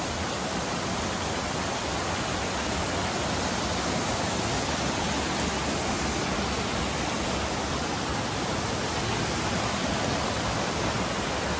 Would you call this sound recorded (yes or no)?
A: yes